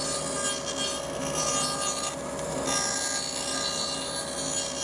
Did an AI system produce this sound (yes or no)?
no